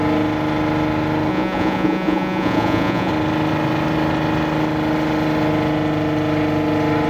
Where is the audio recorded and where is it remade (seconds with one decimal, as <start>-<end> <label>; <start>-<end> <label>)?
0.0-1.3 recorded; 1.3-3.1 remade; 3.1-7.1 recorded